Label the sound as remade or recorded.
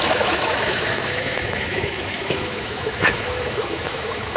remade